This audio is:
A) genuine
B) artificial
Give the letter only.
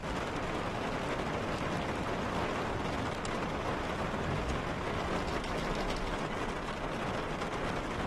A